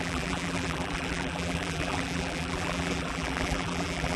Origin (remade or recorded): remade